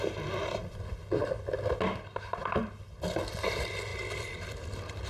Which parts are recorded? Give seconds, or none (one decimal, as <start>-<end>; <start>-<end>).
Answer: 0.0-0.6; 1.3-2.6; 3.2-3.9